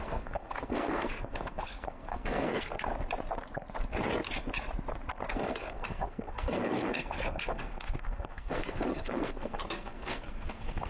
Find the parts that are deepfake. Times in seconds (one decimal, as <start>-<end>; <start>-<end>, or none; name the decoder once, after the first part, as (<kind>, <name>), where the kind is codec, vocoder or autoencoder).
0.0-2.9 (codec, SNAC); 5.3-10.9

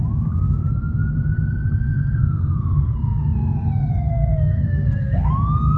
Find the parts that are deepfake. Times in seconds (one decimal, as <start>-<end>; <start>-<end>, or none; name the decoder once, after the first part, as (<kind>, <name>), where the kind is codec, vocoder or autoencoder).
1.8-5.3 (codec, SNAC)

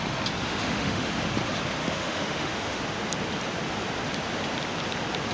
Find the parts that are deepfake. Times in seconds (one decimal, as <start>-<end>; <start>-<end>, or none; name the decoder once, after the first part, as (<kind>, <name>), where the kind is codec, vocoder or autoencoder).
0.4-1.1 (autoencoder, DAC-VAE); 1.8-2.8

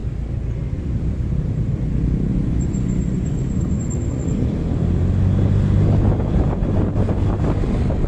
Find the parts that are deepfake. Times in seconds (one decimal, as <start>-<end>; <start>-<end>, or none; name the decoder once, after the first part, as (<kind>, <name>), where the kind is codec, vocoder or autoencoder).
2.3-4.4 (vocoder, Vocos)

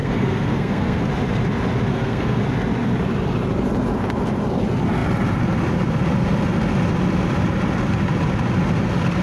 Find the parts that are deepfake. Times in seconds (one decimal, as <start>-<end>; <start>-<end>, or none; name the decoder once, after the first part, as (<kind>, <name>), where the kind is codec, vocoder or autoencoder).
0.0-1.1 (codec, SNAC); 1.9-2.4

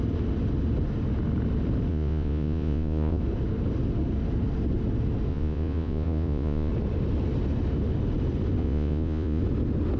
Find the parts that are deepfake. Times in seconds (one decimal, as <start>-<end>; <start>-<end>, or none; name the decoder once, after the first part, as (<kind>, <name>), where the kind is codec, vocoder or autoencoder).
1.9-3.2 (vocoder, Vocos); 5.3-6.7; 8.6-9.4